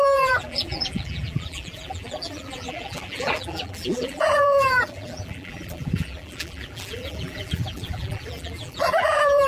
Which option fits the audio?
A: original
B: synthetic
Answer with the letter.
B